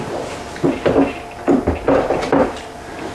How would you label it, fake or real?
real